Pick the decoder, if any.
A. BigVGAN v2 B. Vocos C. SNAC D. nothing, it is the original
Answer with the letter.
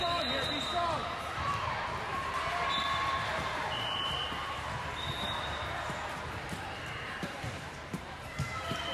A